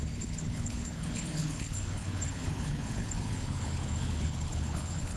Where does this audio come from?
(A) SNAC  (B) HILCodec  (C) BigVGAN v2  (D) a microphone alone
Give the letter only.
B